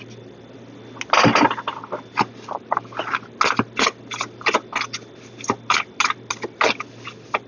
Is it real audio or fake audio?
real